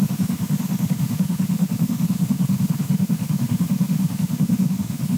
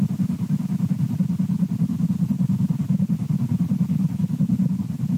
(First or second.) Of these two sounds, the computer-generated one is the first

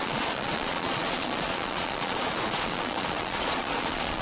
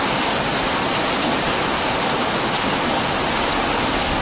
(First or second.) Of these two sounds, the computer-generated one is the first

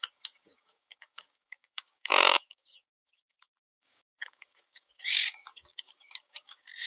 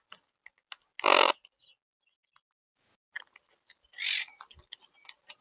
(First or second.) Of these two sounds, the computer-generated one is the first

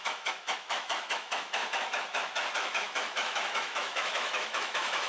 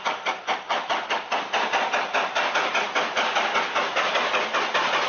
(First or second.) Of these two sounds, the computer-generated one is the first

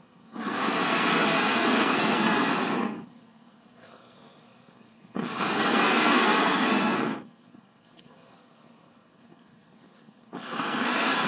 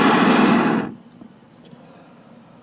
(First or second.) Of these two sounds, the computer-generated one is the first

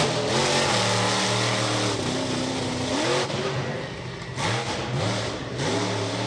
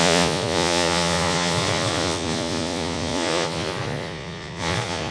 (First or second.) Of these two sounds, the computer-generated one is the second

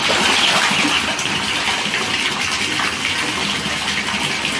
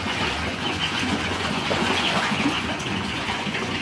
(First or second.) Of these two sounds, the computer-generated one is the second